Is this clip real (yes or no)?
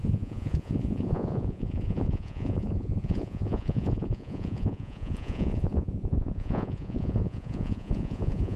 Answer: no